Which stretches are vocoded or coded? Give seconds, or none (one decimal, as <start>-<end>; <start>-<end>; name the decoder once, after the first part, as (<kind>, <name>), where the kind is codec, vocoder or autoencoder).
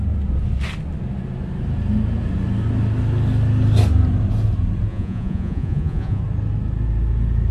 4.9-6.2 (vocoder, Vocos)